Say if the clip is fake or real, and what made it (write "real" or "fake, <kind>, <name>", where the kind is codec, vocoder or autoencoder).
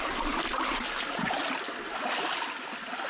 real